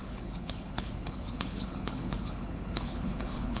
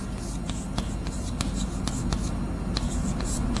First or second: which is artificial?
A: first